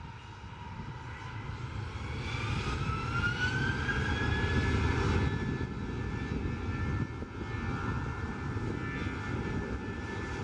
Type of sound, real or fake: real